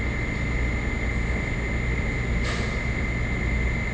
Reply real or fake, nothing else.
real